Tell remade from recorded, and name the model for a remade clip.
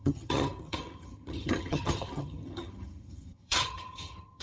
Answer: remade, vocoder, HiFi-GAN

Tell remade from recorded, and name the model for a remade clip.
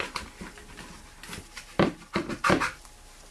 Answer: recorded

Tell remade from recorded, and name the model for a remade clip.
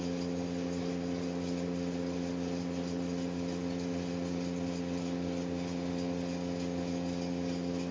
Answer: recorded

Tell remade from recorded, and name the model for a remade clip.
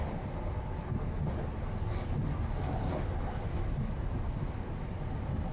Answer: recorded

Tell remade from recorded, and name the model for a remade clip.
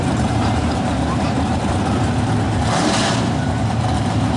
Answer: remade, vocoder, BigVGAN v2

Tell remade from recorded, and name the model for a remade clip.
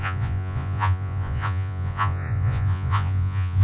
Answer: remade, vocoder, Vocos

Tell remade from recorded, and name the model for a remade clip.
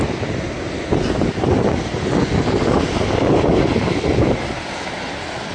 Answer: recorded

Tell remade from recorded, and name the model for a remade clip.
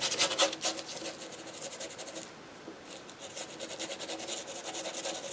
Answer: recorded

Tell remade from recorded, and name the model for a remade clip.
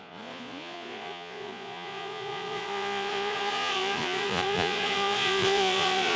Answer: remade, vocoder, Vocos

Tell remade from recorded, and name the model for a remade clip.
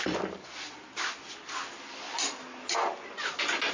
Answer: recorded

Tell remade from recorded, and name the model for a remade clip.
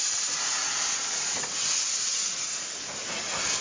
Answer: recorded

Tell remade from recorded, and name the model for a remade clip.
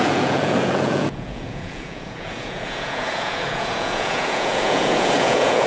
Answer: remade, vocoder, Vocos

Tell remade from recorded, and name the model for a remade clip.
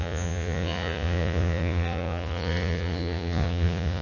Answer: remade, vocoder, Vocos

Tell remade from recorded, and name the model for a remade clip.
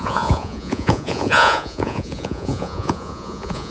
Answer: remade, vocoder, Vocos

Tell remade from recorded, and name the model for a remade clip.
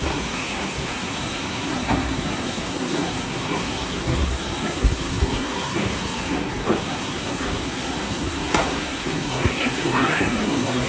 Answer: remade, codec, SNAC